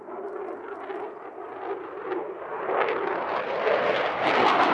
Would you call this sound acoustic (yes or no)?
yes